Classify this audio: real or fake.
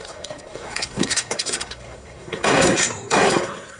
fake